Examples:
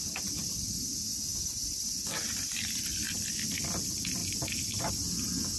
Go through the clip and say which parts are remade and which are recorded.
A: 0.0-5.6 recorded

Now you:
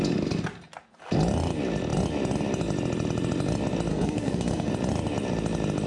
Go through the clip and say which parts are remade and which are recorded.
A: 0.0-3.9 recorded; 3.9-4.7 remade; 4.7-5.9 recorded

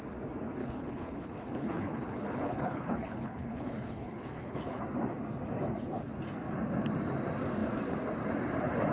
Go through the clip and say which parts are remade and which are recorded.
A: 0.0-0.6 recorded; 0.6-4.8 remade; 4.8-8.9 recorded

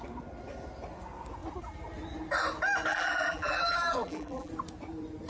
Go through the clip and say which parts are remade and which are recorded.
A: 0.0-2.9 recorded; 2.9-4.5 remade; 4.5-5.3 recorded

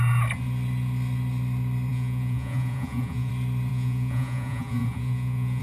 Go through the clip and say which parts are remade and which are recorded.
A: 0.0-1.9 recorded; 1.9-3.3 remade; 3.3-3.7 recorded; 3.7-5.6 remade

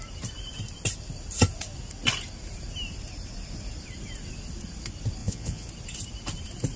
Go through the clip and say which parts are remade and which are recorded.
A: 0.0-5.2 recorded; 5.2-5.7 remade; 5.7-6.8 recorded

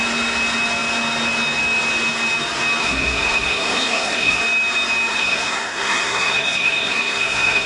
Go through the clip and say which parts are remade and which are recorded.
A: 0.0-2.8 recorded; 2.8-4.4 remade; 4.4-5.1 recorded; 5.1-7.7 remade